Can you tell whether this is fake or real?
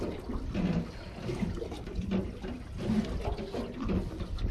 real